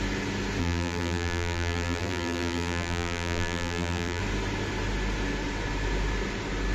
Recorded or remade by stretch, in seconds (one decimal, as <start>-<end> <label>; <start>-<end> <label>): 0.0-0.6 recorded; 0.6-4.2 remade; 4.2-6.7 recorded